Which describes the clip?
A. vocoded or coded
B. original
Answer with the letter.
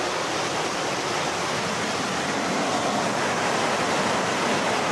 B